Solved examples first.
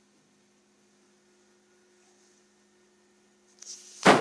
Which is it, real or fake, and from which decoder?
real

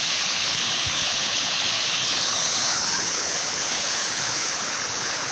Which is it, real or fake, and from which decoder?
fake, codec, HILCodec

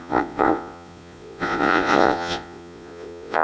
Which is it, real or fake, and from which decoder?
fake, vocoder, Vocos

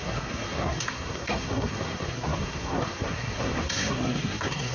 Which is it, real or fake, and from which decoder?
fake, codec, SNAC